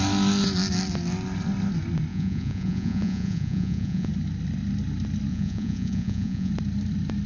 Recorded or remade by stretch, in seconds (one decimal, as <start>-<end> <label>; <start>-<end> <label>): 0.0-2.1 recorded; 2.1-4.1 remade; 4.1-5.3 recorded; 5.3-6.5 remade; 6.5-7.3 recorded